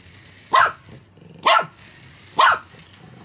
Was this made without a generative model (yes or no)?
yes